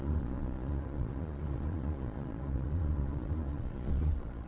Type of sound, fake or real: fake